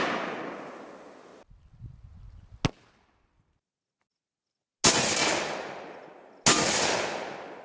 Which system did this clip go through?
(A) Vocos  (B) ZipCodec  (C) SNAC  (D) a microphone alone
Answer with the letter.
D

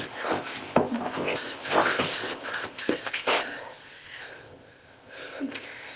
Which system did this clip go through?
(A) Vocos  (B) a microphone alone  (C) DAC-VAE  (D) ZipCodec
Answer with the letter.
D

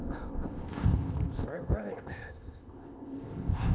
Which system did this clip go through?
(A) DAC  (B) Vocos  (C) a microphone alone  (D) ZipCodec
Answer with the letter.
D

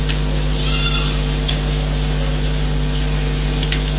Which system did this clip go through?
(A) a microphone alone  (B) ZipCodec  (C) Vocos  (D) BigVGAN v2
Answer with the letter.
A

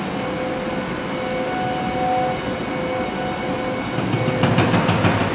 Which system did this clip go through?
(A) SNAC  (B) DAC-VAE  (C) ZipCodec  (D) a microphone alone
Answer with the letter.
D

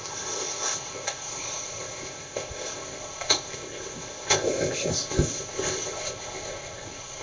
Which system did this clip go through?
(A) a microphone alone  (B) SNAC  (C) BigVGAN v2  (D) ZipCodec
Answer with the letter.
D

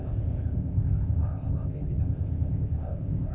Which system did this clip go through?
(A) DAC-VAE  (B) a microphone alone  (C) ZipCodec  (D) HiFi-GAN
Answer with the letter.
C